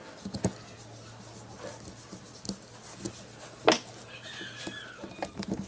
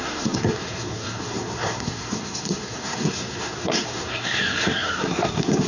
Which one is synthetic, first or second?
second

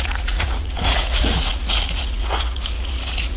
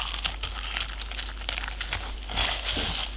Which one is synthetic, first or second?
first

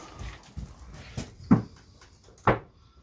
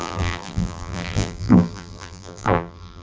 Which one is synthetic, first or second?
second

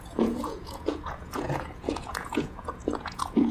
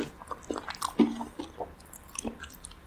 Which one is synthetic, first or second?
first